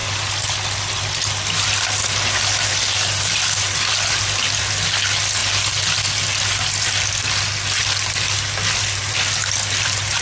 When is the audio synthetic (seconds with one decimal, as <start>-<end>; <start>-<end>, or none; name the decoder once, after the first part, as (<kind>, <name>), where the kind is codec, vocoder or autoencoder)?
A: none